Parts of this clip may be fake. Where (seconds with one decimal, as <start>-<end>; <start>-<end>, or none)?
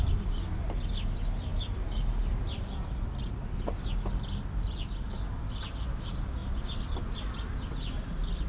6.4-7.0